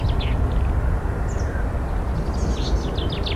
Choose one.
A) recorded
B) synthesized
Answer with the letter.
A